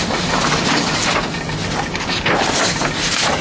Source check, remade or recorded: recorded